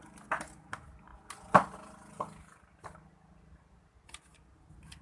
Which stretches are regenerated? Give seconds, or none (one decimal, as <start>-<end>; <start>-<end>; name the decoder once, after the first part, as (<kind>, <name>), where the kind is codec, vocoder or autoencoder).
none